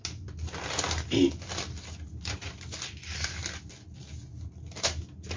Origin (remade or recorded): recorded